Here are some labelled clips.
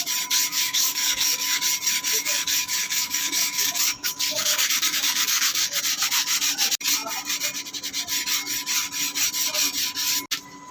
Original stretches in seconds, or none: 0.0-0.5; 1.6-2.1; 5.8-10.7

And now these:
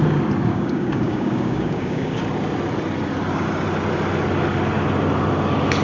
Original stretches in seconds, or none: 0.0-0.5; 2.2-5.8

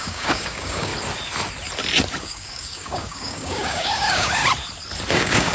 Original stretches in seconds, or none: 0.9-2.2; 4.4-5.1

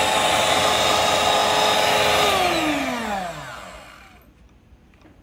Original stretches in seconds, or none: 0.0-5.2

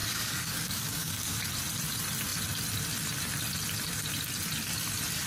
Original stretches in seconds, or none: 1.4-5.3

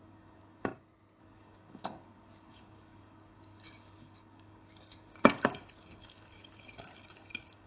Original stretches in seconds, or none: 0.7-1.2

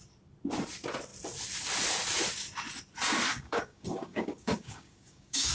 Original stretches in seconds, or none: 0.0-3.3